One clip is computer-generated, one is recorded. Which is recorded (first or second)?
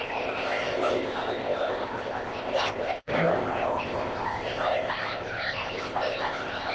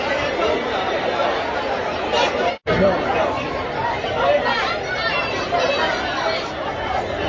second